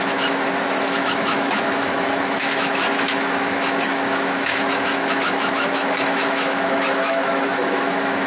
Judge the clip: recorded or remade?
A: remade